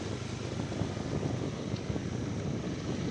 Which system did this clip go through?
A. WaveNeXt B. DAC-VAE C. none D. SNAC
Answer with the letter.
C